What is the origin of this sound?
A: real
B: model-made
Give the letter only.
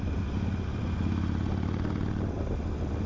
A